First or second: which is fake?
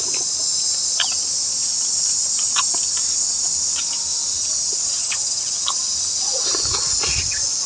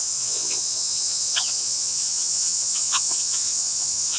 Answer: second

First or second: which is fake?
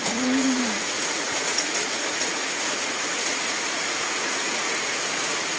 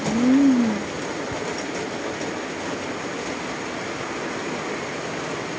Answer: first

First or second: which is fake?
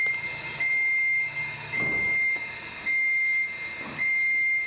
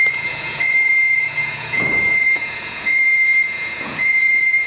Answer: second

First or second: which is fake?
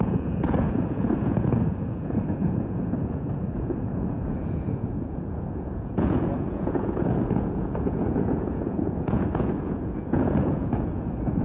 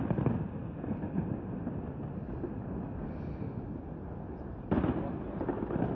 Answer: first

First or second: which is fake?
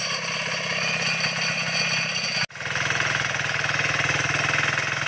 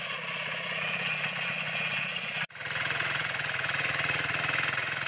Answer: second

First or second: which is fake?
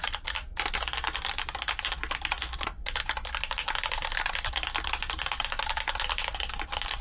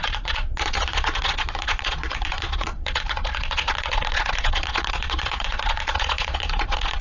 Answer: second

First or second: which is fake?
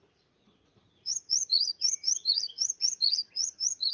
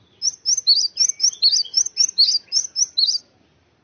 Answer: first